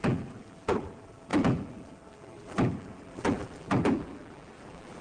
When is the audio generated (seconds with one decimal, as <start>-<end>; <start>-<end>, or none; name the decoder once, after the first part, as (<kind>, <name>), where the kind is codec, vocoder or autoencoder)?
0.0-5.0 (vocoder, BigVGAN v2)